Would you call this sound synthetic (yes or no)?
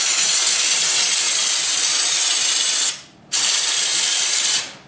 no